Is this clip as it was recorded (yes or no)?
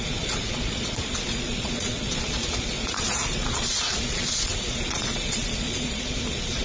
no